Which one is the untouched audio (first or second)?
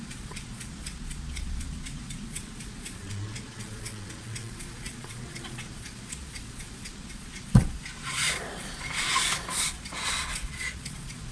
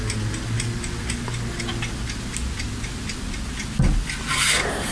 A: second